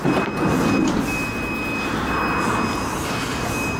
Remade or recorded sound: recorded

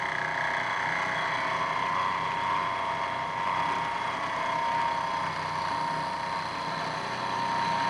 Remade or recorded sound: recorded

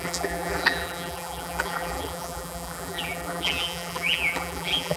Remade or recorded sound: remade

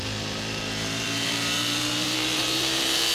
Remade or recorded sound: remade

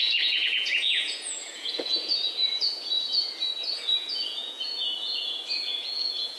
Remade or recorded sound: remade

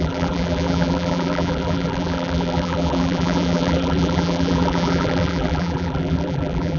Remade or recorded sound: remade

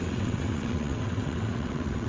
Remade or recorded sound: remade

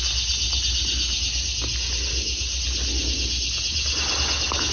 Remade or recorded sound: recorded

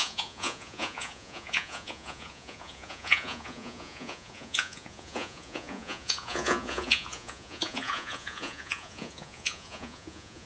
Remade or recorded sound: remade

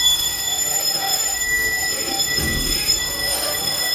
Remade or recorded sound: remade